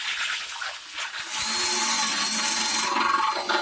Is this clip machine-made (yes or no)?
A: no